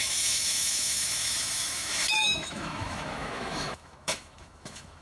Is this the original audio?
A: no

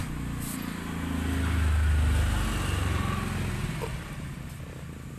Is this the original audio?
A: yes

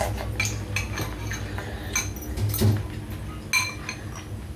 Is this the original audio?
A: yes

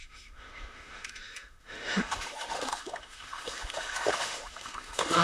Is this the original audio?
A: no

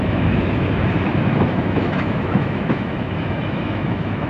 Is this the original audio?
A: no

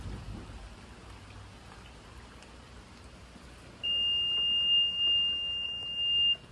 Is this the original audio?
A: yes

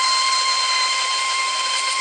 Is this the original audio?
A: yes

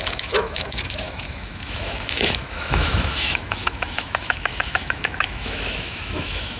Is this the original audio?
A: no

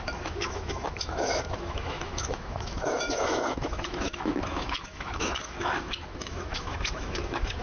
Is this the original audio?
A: no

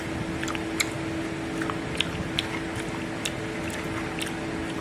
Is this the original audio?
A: yes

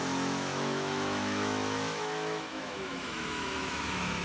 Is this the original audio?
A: no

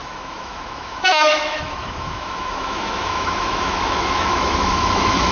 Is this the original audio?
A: no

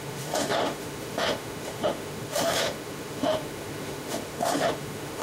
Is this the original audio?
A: no